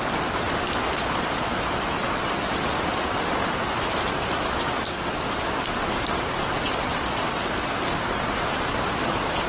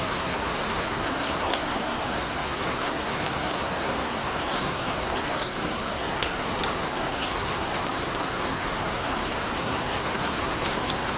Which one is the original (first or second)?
first